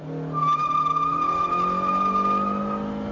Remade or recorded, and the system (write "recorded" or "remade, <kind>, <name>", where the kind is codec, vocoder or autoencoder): recorded